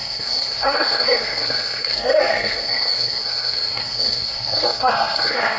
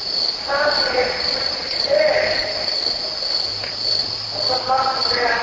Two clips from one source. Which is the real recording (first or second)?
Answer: second